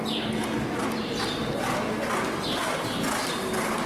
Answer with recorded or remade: recorded